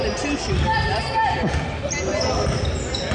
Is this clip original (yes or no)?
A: yes